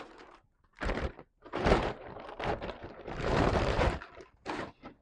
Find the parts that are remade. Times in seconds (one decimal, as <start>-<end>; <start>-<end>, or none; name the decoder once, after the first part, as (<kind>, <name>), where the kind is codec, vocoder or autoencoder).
0.0-5.0 (vocoder, BigVGAN v2)